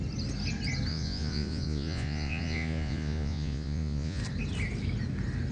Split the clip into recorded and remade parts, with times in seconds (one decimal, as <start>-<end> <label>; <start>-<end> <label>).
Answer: 0.0-0.9 recorded; 0.9-4.2 remade; 4.2-5.5 recorded